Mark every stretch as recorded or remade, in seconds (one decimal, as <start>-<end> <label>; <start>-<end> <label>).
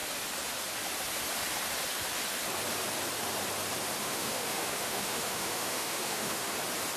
0.0-4.0 recorded; 4.0-6.5 remade; 6.5-7.0 recorded